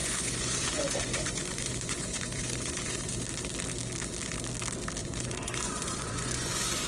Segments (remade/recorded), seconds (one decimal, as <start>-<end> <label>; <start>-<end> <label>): 0.0-3.1 remade; 3.1-5.0 recorded; 5.0-6.9 remade

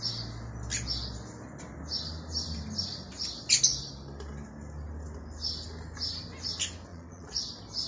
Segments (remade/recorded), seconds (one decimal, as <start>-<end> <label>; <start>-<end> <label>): 0.0-6.9 recorded; 6.9-7.5 remade; 7.5-7.9 recorded

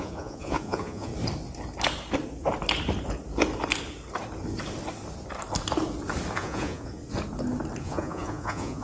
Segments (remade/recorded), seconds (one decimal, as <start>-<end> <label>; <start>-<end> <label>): 0.0-1.1 remade; 1.1-6.3 recorded; 6.3-7.0 remade; 7.0-7.8 recorded; 7.8-8.8 remade

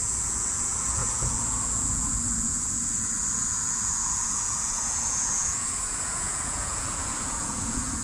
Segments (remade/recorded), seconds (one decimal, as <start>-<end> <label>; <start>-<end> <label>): 0.0-8.0 remade

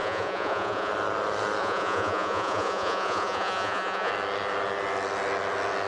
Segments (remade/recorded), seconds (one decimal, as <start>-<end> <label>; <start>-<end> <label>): 0.0-0.9 remade; 0.9-1.6 recorded; 1.6-4.1 remade; 4.1-5.9 recorded

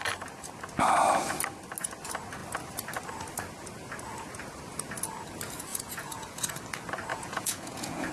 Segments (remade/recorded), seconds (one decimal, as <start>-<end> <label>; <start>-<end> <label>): 0.0-5.7 recorded; 5.7-6.6 remade; 6.6-7.1 recorded; 7.1-8.1 remade

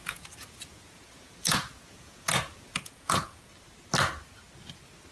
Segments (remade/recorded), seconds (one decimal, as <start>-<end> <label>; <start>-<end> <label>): 0.0-3.5 remade; 3.5-5.1 recorded